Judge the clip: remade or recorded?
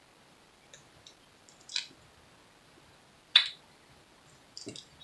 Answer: recorded